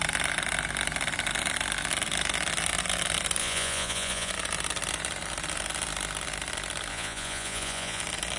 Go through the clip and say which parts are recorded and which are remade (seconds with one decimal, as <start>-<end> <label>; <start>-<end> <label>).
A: 0.0-3.4 recorded; 3.4-4.3 remade; 4.3-6.9 recorded; 6.9-8.0 remade; 8.0-8.4 recorded